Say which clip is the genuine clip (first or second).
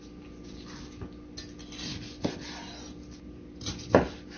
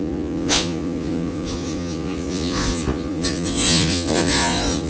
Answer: first